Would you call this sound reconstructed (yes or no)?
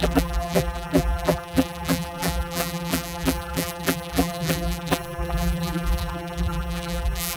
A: yes